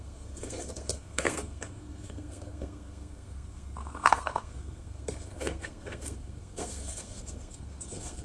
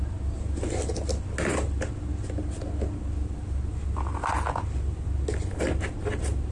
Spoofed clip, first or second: first